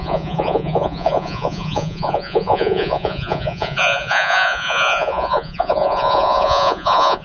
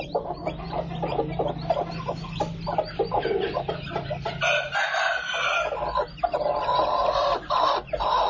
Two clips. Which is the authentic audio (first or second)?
second